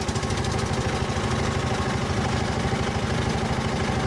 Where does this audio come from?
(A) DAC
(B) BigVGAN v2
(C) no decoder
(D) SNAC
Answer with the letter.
C